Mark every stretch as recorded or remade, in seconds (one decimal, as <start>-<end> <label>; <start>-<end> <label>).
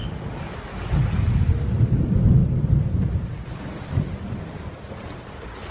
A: 0.0-5.7 recorded